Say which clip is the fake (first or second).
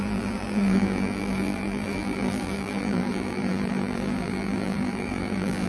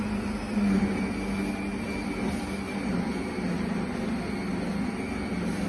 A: first